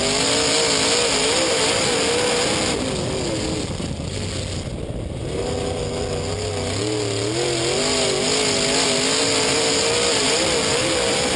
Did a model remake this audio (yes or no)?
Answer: no